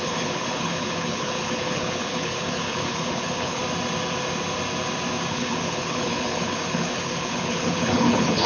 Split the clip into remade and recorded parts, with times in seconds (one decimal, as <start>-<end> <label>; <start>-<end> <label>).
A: 0.0-3.6 remade; 3.6-5.3 recorded; 5.3-8.5 remade